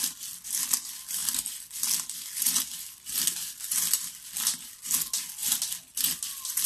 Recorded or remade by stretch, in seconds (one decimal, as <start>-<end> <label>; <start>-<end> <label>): 0.0-6.7 recorded